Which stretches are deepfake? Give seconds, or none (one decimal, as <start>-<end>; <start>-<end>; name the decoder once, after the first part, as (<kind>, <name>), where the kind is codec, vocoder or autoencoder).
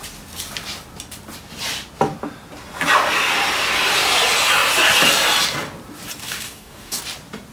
6.2-7.0 (codec, DAC)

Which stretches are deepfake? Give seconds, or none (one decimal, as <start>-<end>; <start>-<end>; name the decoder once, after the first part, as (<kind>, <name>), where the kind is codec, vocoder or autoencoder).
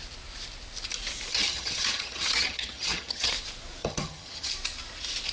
1.3-3.3 (vocoder, HiFi-GAN); 3.8-4.5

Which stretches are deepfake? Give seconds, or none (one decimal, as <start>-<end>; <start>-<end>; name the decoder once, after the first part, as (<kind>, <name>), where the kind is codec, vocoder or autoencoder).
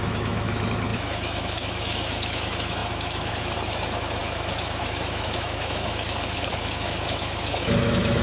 0.0-8.2 (autoencoder, DAC-VAE)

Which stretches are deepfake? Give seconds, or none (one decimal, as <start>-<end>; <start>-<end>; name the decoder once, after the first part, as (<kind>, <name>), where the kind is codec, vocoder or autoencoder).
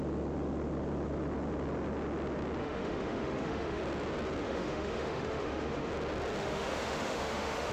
2.6-3.8 (autoencoder, DAC-VAE); 4.4-5.9; 6.4-7.7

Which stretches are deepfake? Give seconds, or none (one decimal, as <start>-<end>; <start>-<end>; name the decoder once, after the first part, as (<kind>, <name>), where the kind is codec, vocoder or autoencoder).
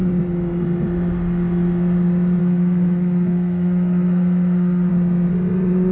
2.4-4.9 (codec, SNAC)